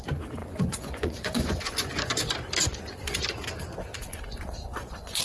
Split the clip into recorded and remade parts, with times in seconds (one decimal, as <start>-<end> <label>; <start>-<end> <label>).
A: 0.0-0.4 recorded; 0.4-2.1 remade; 2.1-2.7 recorded; 2.7-3.2 remade; 3.2-4.1 recorded; 4.1-5.2 remade